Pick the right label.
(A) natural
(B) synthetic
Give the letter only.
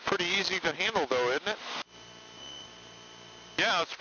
A